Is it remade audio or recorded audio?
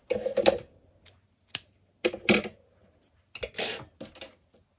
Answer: recorded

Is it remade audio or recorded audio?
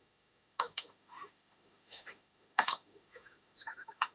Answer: remade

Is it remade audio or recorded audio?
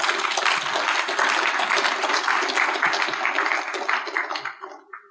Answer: recorded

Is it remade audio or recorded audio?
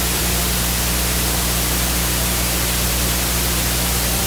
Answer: remade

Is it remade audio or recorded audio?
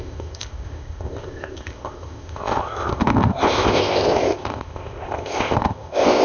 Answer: remade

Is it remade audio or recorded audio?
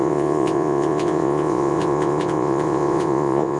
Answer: remade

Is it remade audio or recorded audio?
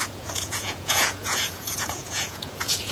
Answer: remade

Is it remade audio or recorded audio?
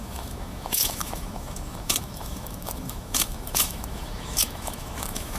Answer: remade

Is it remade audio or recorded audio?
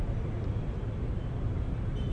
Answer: recorded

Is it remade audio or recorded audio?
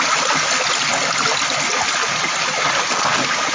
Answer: recorded